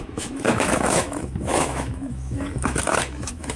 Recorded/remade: remade